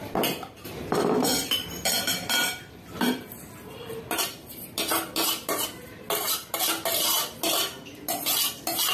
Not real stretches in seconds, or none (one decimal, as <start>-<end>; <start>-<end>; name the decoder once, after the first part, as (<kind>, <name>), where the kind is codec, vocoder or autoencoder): 1.3-4.0 (vocoder, BigVGAN v2)